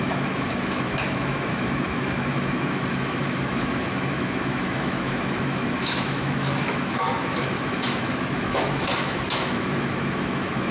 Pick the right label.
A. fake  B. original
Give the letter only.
A